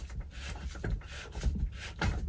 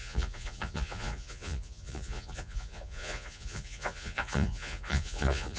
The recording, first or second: first